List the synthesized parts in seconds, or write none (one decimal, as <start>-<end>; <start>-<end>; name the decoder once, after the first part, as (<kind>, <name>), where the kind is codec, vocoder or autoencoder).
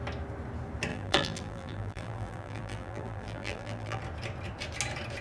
0.9-4.0 (vocoder, BigVGAN v2)